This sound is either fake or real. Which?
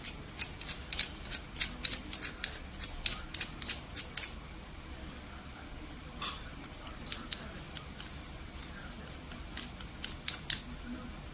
real